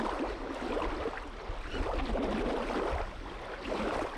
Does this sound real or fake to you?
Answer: real